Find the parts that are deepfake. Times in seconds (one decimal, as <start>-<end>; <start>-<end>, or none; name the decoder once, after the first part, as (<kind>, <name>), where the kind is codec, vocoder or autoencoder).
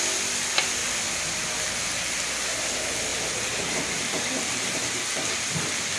none